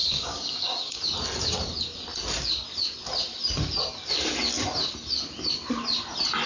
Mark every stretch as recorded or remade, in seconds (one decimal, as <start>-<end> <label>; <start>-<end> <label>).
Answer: 0.0-1.0 remade; 1.0-6.5 recorded